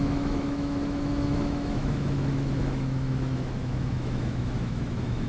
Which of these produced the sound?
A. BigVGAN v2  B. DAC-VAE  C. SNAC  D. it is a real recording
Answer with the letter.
B